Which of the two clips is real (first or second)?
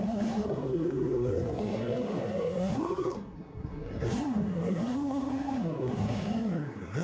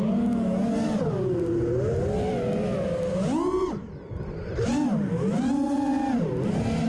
second